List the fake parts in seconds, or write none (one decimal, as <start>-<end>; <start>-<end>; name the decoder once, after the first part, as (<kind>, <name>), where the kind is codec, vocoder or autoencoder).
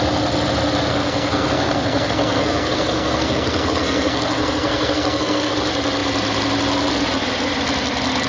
0.9-5.5 (codec, SNAC)